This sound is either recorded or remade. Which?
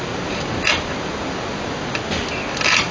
recorded